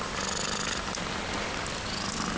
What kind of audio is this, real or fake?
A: real